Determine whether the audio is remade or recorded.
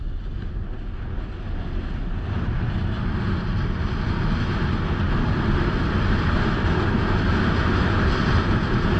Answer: recorded